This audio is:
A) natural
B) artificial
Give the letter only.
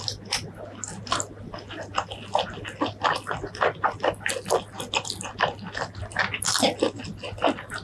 A